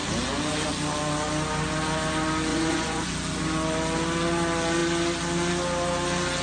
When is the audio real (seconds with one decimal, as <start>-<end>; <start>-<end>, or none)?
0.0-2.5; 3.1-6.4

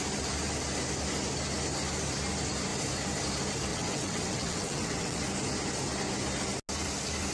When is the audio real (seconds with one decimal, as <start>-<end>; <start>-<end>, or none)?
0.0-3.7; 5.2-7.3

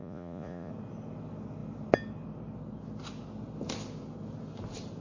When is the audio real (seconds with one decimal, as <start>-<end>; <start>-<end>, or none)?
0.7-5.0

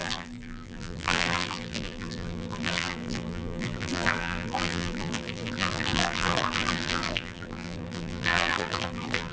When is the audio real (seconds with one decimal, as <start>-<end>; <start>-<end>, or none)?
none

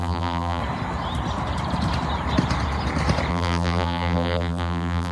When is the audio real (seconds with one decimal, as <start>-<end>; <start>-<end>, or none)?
0.6-3.3